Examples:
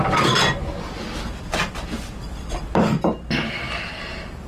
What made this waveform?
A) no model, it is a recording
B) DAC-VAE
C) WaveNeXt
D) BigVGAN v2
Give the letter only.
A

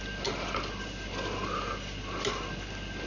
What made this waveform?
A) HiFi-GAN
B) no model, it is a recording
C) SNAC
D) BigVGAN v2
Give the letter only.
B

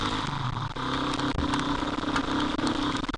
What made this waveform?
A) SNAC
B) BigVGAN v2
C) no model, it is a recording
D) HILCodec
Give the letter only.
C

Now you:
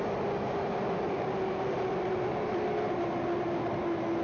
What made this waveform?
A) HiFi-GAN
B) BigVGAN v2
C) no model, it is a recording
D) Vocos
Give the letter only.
C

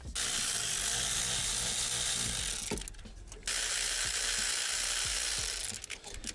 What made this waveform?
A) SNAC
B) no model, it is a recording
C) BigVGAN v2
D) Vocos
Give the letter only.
B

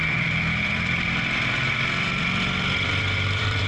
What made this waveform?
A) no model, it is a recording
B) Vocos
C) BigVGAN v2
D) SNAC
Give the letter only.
C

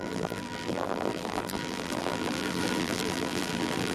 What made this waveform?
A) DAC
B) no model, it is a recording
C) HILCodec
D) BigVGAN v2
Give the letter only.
D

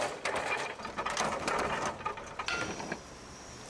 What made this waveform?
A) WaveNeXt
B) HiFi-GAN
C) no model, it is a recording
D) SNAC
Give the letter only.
C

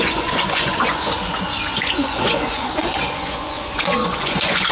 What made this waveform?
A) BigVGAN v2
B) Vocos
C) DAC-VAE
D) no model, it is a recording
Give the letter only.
B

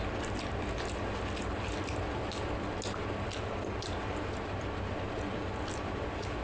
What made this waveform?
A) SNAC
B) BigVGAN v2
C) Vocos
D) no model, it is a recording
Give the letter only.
D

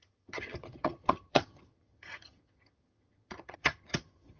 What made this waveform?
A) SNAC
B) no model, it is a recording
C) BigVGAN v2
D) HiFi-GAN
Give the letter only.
D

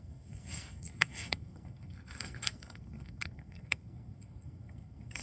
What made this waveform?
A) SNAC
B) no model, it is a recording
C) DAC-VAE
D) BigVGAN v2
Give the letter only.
A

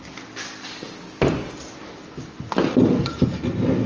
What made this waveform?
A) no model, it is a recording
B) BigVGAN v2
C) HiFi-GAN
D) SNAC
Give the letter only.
A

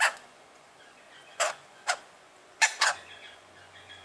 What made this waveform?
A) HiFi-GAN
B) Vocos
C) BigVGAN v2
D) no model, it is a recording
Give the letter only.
B